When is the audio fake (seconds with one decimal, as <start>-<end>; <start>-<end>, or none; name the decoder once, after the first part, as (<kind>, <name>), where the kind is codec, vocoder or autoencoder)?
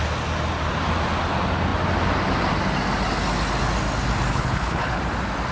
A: 4.3-5.0 (codec, HILCodec)